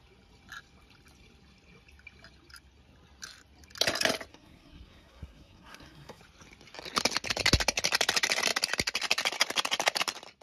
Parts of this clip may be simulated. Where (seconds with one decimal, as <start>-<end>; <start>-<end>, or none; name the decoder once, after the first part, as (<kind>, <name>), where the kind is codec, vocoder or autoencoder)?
4.3-6.2 (codec, SNAC)